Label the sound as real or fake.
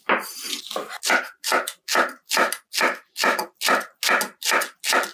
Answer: real